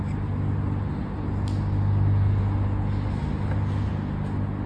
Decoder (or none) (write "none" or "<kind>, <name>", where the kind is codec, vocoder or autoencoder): none